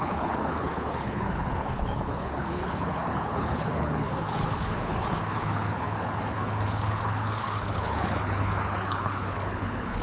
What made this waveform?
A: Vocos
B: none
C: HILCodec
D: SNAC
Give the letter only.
C